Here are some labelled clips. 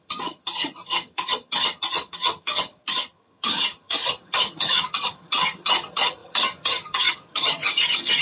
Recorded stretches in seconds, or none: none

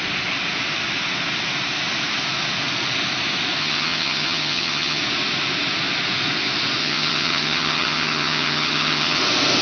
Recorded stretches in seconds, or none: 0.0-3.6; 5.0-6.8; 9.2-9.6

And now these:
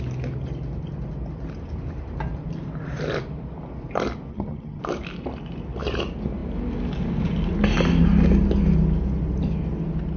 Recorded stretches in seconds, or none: 0.0-4.3; 4.8-10.2